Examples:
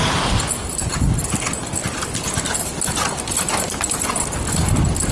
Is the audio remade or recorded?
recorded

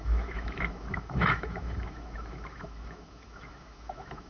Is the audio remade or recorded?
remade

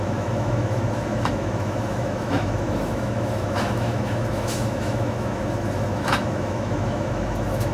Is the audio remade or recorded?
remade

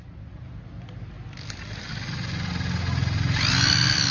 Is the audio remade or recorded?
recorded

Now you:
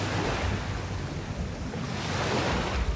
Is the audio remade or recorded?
recorded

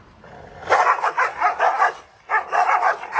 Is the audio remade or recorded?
recorded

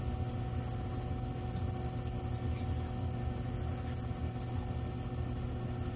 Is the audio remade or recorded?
recorded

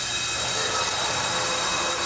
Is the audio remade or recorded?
recorded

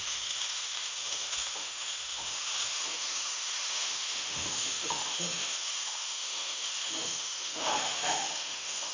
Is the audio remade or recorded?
remade